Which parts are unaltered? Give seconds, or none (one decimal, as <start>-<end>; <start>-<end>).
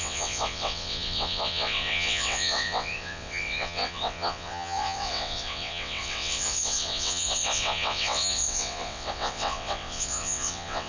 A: none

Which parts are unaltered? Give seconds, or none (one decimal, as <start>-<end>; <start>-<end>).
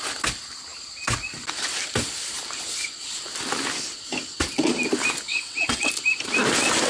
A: 0.0-5.3; 5.9-6.9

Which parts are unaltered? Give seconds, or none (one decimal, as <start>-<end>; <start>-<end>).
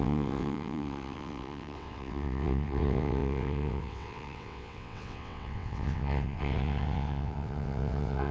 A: none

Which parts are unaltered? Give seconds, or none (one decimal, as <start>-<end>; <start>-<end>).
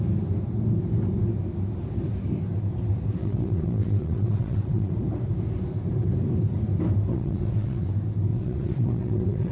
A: 0.0-3.2; 4.9-7.1; 7.9-8.3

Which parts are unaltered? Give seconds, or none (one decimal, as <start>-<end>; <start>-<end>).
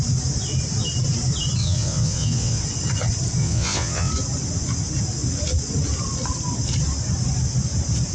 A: 0.0-1.6; 2.6-3.4; 4.1-8.1